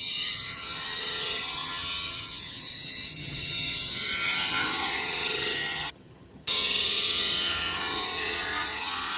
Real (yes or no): no